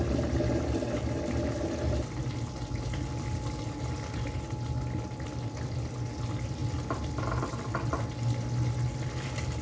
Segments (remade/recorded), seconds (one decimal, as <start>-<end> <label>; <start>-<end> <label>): 0.0-9.6 recorded